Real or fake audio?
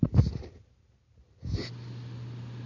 real